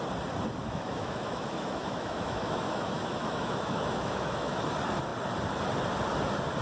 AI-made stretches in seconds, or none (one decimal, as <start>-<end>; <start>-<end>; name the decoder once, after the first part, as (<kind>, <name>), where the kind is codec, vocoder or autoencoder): 0.6-4.6 (autoencoder, DAC-VAE)